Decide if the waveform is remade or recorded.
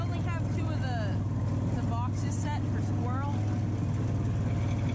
recorded